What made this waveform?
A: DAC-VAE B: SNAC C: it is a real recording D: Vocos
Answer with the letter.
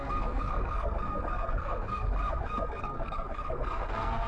B